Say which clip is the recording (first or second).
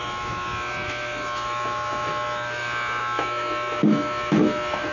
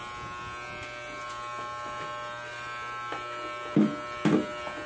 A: second